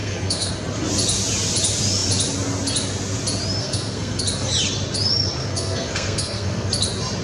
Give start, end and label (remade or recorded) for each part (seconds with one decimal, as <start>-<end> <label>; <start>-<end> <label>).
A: 0.0-0.5 remade; 0.5-3.6 recorded; 3.6-4.2 remade; 4.2-5.4 recorded; 5.4-6.7 remade; 6.7-7.2 recorded